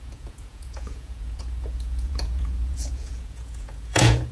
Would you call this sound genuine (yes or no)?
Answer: no